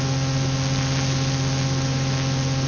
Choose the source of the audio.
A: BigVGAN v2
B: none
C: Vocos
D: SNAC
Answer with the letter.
B